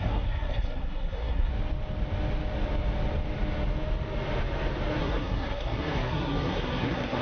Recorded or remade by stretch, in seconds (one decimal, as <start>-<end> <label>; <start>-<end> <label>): 0.0-1.5 remade; 1.5-5.0 recorded; 5.0-7.2 remade